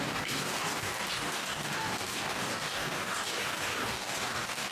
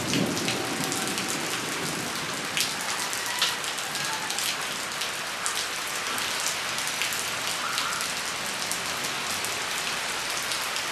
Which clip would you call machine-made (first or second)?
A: first